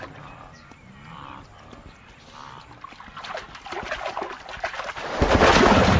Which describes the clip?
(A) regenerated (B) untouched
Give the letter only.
B